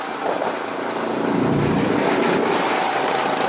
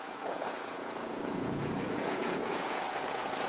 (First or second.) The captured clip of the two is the first